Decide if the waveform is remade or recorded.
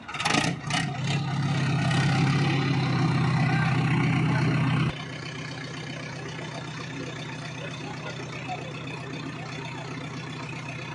recorded